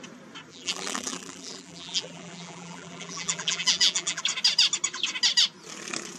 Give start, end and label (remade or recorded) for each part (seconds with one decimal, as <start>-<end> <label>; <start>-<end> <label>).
0.0-0.5 recorded; 0.5-4.2 remade; 4.2-6.2 recorded